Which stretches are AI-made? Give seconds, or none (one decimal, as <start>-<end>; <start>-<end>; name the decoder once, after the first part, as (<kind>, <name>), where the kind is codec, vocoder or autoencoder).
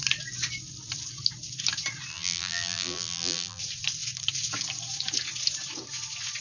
2.1-3.6 (vocoder, BigVGAN v2)